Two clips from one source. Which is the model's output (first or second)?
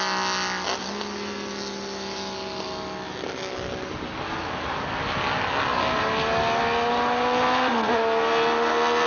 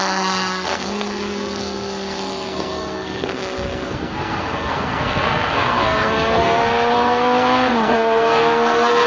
second